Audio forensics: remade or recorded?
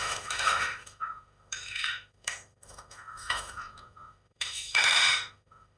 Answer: remade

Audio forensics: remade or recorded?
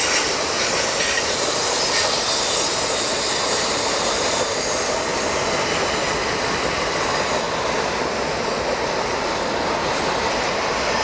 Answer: recorded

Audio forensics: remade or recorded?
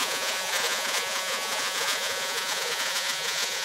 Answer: remade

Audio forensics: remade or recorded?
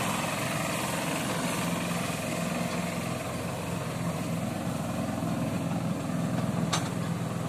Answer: recorded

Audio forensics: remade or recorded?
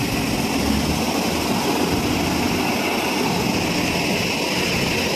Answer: recorded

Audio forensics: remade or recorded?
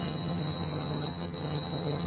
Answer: remade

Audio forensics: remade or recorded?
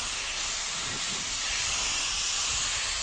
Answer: recorded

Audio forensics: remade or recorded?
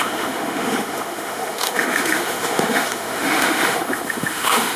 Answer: remade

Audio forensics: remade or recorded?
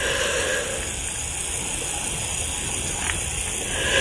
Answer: recorded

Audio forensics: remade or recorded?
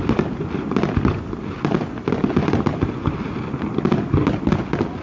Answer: recorded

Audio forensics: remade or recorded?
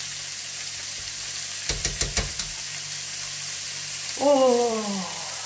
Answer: recorded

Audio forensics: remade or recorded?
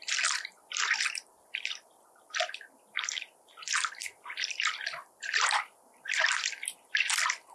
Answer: remade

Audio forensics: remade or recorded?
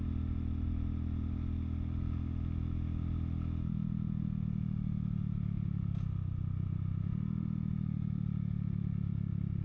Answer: recorded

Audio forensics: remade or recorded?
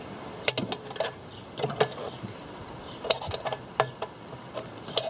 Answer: recorded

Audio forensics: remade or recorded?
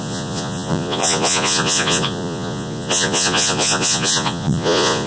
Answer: remade